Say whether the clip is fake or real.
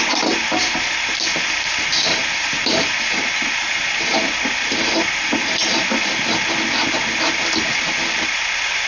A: real